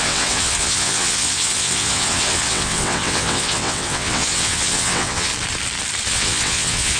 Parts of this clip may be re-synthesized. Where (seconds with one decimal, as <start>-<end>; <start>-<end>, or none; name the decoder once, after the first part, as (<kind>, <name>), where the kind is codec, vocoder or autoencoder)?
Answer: 0.0-5.3 (vocoder, WaveNeXt); 6.1-7.0